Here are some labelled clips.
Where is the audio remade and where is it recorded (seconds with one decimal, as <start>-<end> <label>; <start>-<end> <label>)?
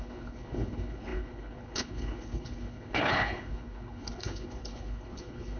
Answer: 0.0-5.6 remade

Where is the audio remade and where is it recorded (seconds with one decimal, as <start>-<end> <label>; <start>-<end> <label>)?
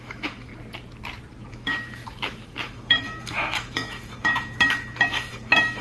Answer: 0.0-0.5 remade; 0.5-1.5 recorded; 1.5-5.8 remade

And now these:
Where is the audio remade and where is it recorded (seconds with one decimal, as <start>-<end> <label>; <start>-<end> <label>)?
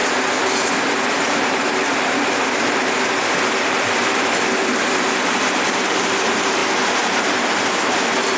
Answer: 0.0-1.2 recorded; 1.2-6.6 remade; 6.6-7.9 recorded; 7.9-8.4 remade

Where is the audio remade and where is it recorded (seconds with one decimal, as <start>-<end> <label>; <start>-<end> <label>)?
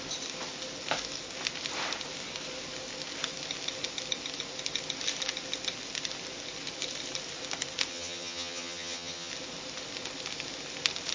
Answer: 0.0-7.9 recorded; 7.9-9.3 remade; 9.3-11.1 recorded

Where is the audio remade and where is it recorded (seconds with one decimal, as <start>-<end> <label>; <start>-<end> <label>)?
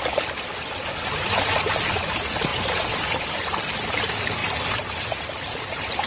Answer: 0.0-6.1 recorded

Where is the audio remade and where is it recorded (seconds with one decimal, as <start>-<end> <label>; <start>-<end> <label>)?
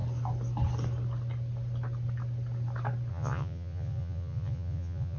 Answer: 0.0-3.1 recorded; 3.1-5.2 remade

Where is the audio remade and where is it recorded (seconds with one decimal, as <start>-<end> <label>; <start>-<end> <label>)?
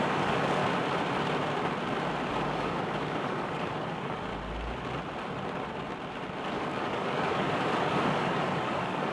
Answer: 0.0-0.6 remade; 0.6-2.4 recorded; 2.4-4.3 remade; 4.3-6.5 recorded; 6.5-9.1 remade